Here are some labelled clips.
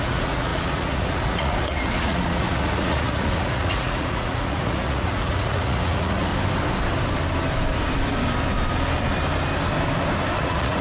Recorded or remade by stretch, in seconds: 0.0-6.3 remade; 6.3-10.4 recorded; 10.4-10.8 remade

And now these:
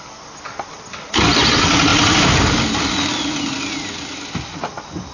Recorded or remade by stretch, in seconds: 0.0-5.1 recorded

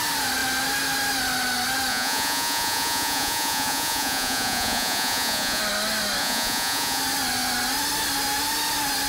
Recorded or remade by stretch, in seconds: 0.0-1.9 recorded; 1.9-5.6 remade; 5.6-6.2 recorded; 6.2-7.0 remade; 7.0-9.1 recorded